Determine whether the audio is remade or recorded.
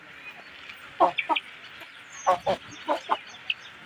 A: recorded